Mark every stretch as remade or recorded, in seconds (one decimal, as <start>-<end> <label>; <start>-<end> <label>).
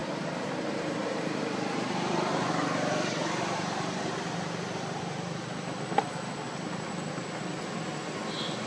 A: 0.0-2.4 remade; 2.4-3.2 recorded; 3.2-5.0 remade; 5.0-8.7 recorded